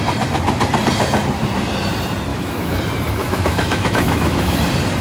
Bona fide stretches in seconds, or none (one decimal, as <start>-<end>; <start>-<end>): 0.0-2.3; 2.8-3.2; 4.6-5.0